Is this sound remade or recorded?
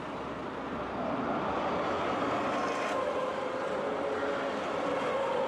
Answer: recorded